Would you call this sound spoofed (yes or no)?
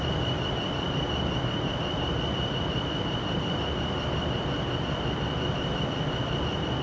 no